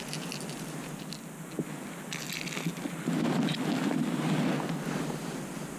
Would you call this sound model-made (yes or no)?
no